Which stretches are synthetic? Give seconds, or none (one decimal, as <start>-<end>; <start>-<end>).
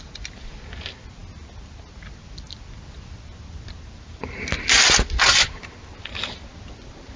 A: none